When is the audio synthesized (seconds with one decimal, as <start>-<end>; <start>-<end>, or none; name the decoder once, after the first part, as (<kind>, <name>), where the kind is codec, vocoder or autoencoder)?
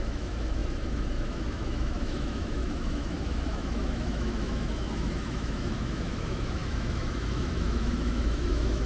0.0-8.9 (autoencoder, DAC-VAE)